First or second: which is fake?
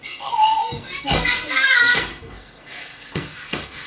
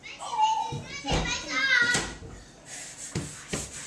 first